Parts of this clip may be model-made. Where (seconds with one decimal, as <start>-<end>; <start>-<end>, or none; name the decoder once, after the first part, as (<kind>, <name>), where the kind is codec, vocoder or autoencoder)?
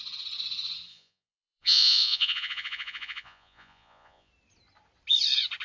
0.9-4.3 (vocoder, Vocos)